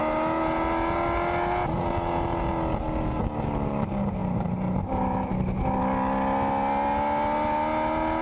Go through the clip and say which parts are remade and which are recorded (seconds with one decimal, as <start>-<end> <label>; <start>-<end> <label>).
0.0-8.2 recorded